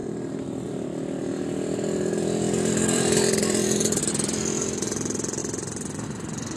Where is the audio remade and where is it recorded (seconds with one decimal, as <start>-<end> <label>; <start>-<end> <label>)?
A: 0.0-6.6 remade